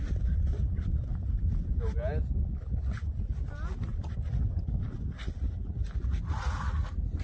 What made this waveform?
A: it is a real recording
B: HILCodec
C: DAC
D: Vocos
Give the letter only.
A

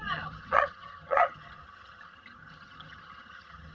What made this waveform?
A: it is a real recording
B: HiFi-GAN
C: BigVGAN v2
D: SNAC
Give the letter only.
B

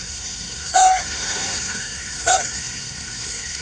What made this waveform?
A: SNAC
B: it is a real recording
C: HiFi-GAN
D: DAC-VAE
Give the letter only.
A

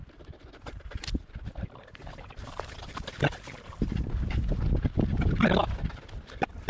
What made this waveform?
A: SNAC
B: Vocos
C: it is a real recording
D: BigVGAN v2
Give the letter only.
C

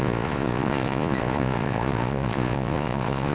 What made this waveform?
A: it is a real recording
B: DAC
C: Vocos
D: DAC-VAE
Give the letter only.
C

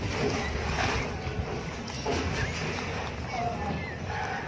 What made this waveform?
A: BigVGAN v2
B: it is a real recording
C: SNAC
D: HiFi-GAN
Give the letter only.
B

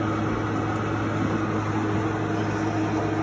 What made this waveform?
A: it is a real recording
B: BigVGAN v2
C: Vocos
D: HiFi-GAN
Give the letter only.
A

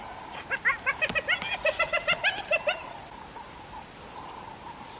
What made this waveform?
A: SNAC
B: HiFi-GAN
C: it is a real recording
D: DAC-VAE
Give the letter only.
C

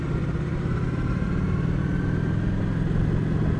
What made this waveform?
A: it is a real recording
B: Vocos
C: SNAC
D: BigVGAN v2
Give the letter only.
A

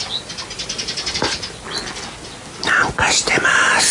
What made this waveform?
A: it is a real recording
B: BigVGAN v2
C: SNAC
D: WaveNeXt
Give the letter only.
A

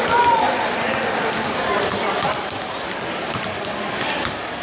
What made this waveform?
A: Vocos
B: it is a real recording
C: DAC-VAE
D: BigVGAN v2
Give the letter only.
B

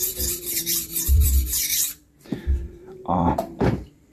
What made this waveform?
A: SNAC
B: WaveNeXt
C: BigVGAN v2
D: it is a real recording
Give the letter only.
C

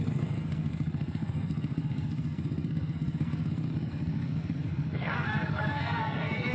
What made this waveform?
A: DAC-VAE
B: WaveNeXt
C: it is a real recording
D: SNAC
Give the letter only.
D